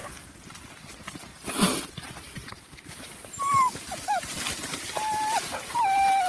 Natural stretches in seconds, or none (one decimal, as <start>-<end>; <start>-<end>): 0.0-2.4

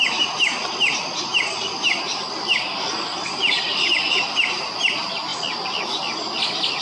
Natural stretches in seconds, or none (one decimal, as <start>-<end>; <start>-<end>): 0.0-6.8